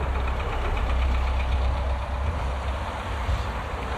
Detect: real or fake fake